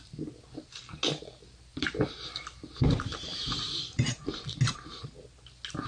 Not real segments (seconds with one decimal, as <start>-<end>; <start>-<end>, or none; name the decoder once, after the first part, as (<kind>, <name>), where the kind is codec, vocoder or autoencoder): 1.7-4.4 (vocoder, BigVGAN v2)